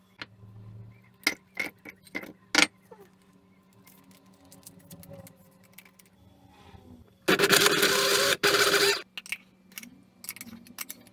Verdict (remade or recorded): recorded